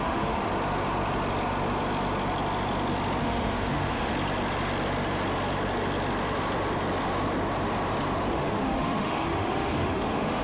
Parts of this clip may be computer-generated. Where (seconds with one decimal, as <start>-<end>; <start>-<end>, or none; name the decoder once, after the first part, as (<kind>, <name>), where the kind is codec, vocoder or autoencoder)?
0.0-0.5 (autoencoder, DAC-VAE); 3.2-4.1; 8.3-10.4